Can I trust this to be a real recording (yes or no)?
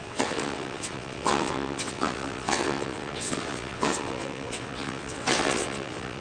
no